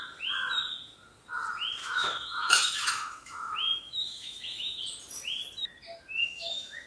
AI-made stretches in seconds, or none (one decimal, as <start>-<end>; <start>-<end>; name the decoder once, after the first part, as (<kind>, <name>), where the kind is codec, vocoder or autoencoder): 1.8-4.8 (autoencoder, DAC-VAE); 6.2-6.9

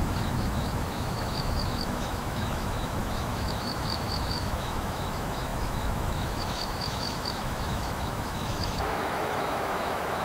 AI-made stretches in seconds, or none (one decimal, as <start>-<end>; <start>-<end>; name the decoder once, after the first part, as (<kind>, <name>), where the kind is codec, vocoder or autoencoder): 0.0-10.2 (autoencoder, DAC-VAE)

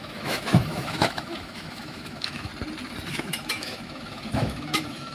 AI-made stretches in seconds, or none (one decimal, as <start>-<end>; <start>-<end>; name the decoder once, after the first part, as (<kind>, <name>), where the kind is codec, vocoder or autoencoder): 0.0-2.5 (autoencoder, DAC-VAE); 3.1-5.1

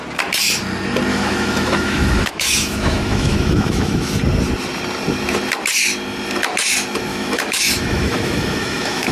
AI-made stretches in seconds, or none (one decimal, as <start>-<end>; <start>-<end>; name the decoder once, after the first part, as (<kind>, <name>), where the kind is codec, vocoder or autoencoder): 1.1-4.1 (autoencoder, DAC-VAE); 7.1-9.1

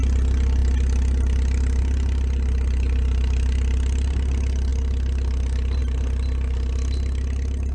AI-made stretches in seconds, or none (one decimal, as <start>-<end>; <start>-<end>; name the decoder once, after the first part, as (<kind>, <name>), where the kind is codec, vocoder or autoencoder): none